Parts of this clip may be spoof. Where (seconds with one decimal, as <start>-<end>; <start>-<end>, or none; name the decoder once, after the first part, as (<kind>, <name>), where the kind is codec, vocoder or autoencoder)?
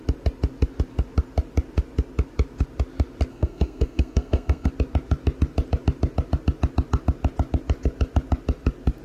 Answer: 3.3-4.7 (codec, SNAC)